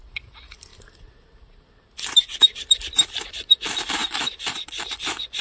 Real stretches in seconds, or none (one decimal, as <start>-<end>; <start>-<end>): 0.0-4.0; 4.6-5.4